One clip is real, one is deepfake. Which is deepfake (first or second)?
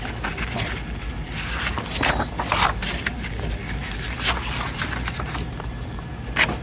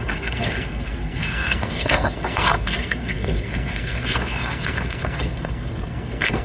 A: second